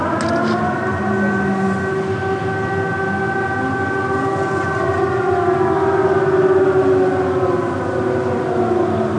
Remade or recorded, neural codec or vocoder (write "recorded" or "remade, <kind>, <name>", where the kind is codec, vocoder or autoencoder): recorded